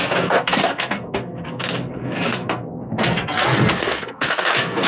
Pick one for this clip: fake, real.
fake